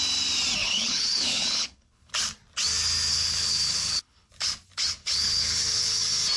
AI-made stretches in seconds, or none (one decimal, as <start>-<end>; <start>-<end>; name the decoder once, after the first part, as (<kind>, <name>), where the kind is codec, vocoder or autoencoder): 0.6-2.1 (codec, HILCodec); 3.1-4.3; 5.0-6.0